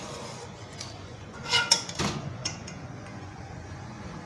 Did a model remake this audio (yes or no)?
yes